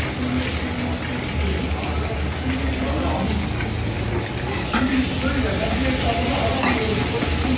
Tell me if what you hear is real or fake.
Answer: real